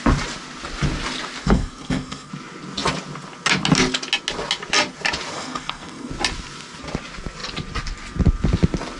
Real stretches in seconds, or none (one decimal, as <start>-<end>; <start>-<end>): 0.0-1.4; 2.3-5.3; 6.1-9.0